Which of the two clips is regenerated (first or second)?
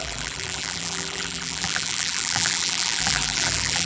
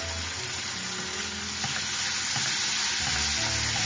first